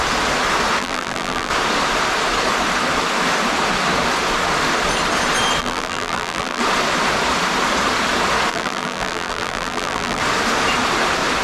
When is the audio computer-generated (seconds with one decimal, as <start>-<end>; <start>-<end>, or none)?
0.8-1.5; 5.6-6.6; 8.5-10.2